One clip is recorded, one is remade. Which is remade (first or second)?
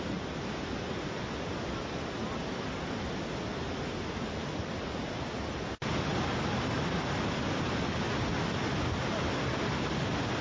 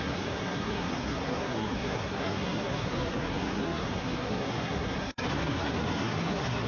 second